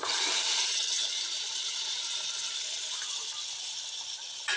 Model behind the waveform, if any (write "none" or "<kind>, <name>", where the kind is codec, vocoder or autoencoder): none